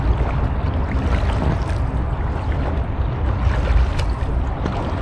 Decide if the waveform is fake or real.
real